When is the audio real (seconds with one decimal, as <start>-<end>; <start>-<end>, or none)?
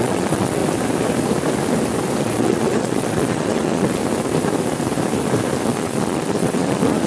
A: 0.6-2.2; 4.0-5.6